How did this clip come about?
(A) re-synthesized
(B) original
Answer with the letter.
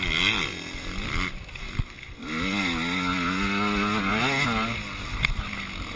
B